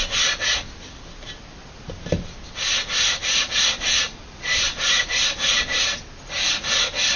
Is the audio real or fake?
real